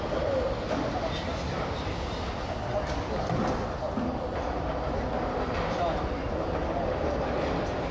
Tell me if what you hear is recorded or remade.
recorded